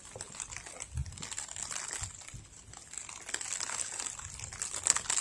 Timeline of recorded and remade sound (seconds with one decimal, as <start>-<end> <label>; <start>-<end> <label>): 0.0-5.2 recorded